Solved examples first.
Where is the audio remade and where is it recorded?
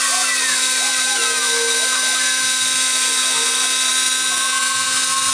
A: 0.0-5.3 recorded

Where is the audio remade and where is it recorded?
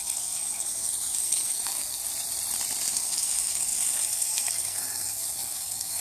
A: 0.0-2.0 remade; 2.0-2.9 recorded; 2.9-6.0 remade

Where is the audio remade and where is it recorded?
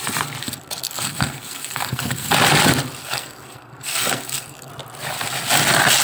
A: 0.0-0.4 recorded; 0.4-2.3 remade; 2.3-3.0 recorded; 3.0-4.7 remade; 4.7-6.0 recorded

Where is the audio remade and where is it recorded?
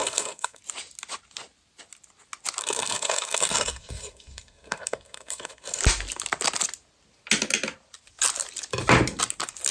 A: 0.0-0.6 remade; 0.6-2.6 recorded; 2.6-5.8 remade; 5.8-9.7 recorded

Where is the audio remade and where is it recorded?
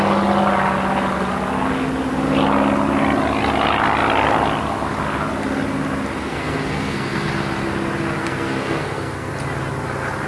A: 0.0-6.2 recorded; 6.2-7.3 remade; 7.3-8.2 recorded; 8.2-9.3 remade; 9.3-10.3 recorded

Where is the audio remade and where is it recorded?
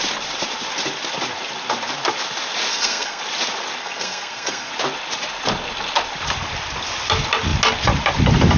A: 0.0-2.7 recorded; 2.7-3.2 remade; 3.2-3.8 recorded; 3.8-4.7 remade; 4.7-8.6 recorded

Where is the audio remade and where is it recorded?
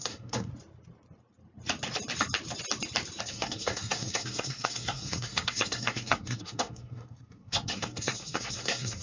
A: 0.0-0.5 remade; 0.5-3.2 recorded; 3.2-9.0 remade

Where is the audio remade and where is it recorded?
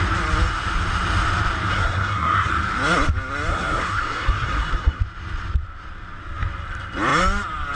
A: 0.0-1.7 recorded; 1.7-2.5 remade; 2.5-3.5 recorded; 3.5-5.0 remade; 5.0-7.8 recorded